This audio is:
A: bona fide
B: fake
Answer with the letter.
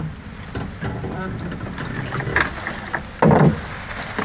A